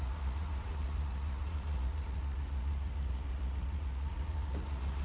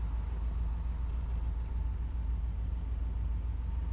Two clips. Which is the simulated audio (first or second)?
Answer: first